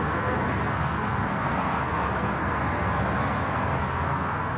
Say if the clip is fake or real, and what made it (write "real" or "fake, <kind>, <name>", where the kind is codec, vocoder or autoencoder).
fake, codec, SNAC